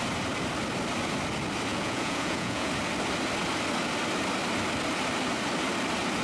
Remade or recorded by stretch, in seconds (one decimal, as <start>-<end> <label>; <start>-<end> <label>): 0.0-1.7 recorded; 1.7-2.7 remade; 2.7-6.2 recorded